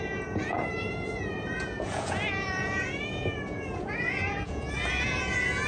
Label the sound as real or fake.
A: fake